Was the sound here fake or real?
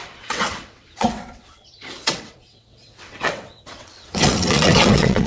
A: fake